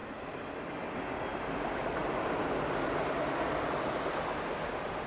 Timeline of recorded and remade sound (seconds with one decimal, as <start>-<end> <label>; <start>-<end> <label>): 0.0-1.3 recorded; 1.3-4.4 remade; 4.4-5.1 recorded